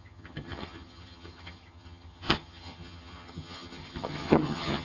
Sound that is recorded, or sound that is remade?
remade